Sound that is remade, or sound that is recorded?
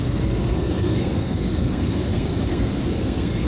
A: remade